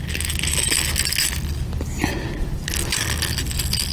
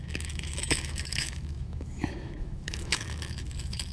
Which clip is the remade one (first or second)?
second